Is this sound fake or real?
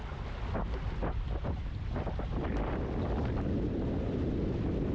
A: real